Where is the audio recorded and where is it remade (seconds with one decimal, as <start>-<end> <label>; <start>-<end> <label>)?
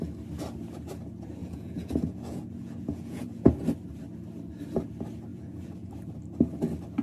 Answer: 0.0-1.4 recorded; 1.4-3.5 remade; 3.5-5.3 recorded; 5.3-5.9 remade; 5.9-7.0 recorded